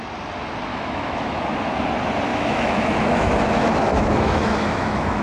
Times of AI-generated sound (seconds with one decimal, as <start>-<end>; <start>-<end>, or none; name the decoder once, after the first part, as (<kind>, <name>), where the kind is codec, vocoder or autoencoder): 0.7-1.4 (autoencoder, DAC-VAE); 2.3-5.2